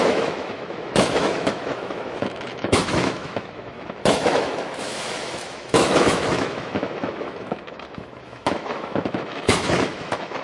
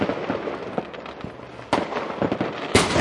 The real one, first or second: second